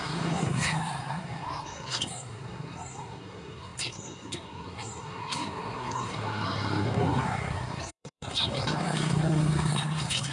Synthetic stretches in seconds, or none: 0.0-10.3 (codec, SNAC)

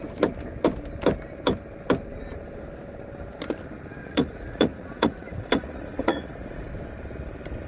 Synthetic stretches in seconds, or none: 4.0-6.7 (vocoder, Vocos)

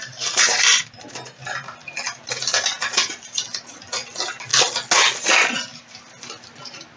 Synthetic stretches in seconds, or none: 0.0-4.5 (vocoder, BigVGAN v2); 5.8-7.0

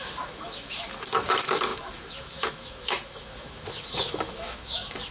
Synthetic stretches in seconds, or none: 0.0-5.1 (autoencoder, DAC-VAE)